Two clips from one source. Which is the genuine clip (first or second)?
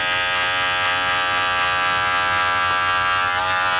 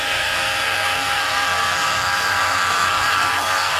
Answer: first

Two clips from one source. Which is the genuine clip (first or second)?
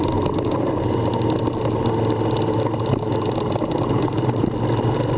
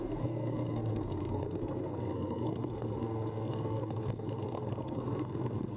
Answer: first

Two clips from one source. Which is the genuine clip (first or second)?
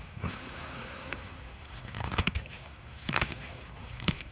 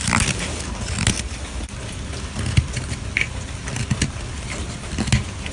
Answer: second